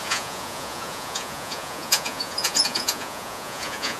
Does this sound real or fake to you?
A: fake